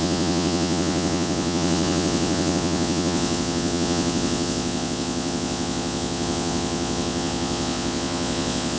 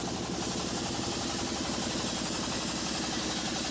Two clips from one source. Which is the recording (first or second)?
second